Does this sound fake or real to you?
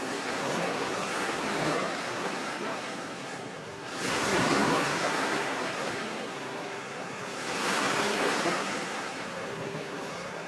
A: fake